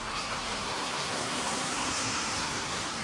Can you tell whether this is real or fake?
fake